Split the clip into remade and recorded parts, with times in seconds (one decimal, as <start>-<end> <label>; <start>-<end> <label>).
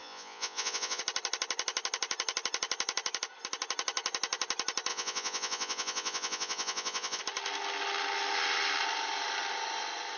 0.0-1.0 remade; 1.0-4.9 recorded; 4.9-7.2 remade; 7.2-10.2 recorded